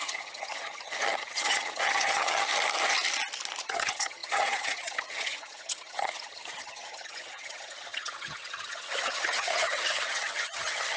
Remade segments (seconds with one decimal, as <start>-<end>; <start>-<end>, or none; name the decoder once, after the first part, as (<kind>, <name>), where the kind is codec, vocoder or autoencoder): 0.0-2.5 (vocoder, HiFi-GAN); 3.6-11.0